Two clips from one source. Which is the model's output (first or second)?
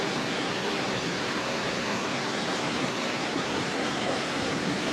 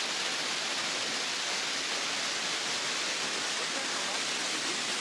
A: first